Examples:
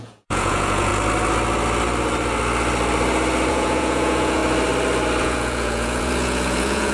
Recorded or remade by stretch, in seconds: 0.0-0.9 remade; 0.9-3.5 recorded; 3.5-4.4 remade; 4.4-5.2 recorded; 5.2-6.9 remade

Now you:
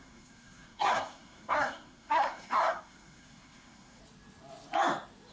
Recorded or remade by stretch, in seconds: 0.0-4.0 remade; 4.0-5.3 recorded

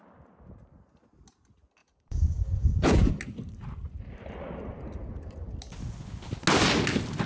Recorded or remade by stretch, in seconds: 0.0-1.8 recorded; 1.8-3.1 remade; 3.1-7.3 recorded

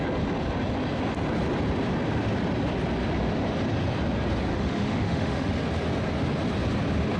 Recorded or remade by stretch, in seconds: 0.0-4.5 recorded; 4.5-5.5 remade; 5.5-7.2 recorded